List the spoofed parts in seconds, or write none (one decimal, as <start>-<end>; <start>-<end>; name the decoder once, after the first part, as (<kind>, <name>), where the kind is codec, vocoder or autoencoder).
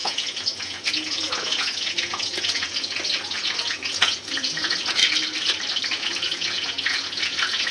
0.0-5.0 (vocoder, Vocos); 6.0-7.7